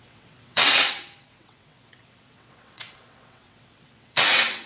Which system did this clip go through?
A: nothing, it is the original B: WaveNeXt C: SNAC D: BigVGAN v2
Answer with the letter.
B